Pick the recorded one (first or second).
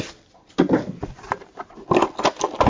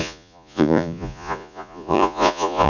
first